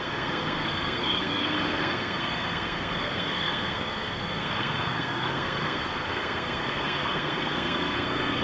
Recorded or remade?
remade